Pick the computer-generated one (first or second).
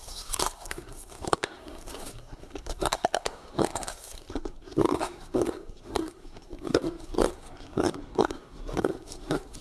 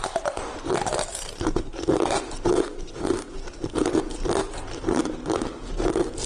first